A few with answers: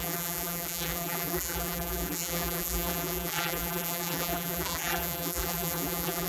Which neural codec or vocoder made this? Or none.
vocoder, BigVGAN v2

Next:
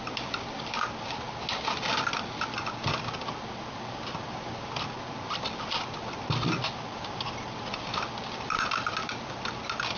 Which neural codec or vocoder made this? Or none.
none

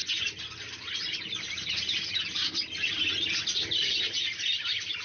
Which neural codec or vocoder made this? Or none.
none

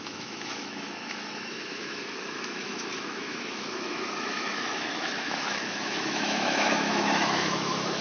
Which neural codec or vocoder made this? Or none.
autoencoder, DAC-VAE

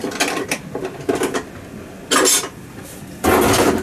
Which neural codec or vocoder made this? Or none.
none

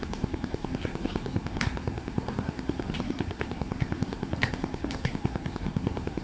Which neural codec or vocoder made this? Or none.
codec, SNAC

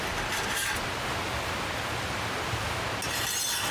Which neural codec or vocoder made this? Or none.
none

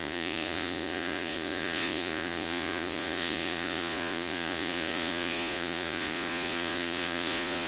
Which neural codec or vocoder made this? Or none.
vocoder, Vocos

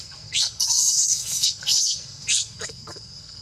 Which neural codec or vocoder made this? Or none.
codec, SNAC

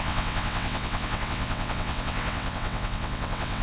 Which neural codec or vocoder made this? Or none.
vocoder, WaveNeXt